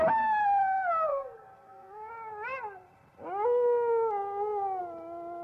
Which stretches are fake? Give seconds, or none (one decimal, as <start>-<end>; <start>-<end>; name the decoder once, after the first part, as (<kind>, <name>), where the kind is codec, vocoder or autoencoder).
1.1-2.1 (codec, SNAC)